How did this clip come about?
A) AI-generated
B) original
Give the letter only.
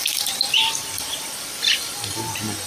B